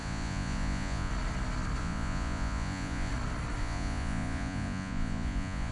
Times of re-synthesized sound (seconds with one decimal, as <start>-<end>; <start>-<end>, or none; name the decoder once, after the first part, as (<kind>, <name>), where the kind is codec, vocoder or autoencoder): 0.0-1.1 (vocoder, Vocos); 1.8-3.1; 3.6-5.7